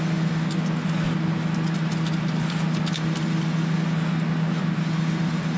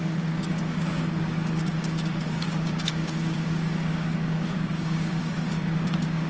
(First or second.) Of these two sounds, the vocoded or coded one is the second